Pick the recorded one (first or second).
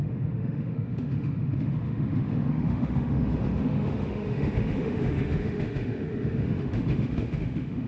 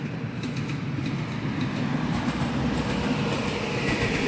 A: second